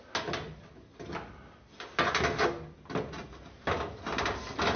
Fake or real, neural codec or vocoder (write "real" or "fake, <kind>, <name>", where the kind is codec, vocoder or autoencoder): real